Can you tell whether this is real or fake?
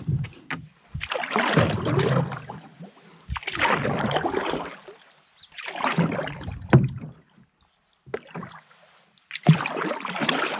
real